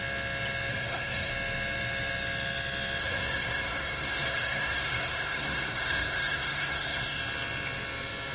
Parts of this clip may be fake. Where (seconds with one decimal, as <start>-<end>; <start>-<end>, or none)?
0.7-1.3; 3.0-7.2